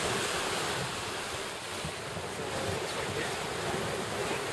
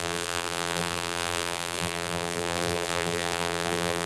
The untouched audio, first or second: first